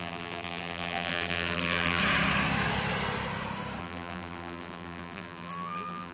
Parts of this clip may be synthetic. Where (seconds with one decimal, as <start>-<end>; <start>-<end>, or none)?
0.0-2.0; 3.8-6.1

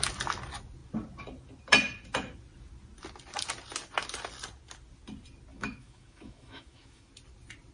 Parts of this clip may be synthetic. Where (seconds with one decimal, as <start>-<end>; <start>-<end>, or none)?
5.5-7.1

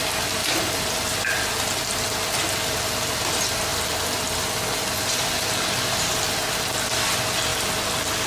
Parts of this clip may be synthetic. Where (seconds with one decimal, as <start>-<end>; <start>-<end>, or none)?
none

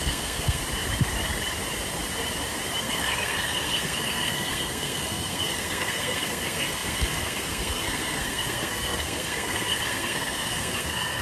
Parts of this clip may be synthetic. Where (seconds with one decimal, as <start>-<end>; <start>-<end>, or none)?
0.0-0.6; 2.8-11.2